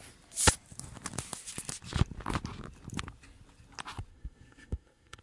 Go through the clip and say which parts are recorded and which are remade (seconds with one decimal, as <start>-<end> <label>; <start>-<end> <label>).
0.0-4.1 recorded; 4.1-5.2 remade